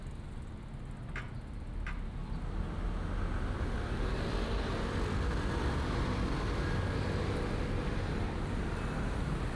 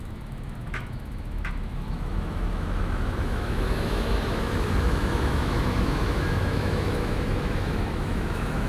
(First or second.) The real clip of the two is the first